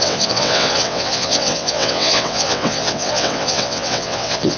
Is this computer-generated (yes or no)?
yes